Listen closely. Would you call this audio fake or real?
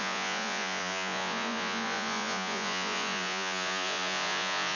fake